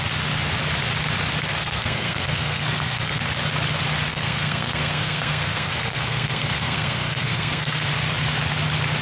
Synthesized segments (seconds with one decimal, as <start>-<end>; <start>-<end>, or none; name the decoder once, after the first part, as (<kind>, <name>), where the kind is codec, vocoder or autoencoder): 1.5-3.2 (codec, SNAC); 4.1-7.9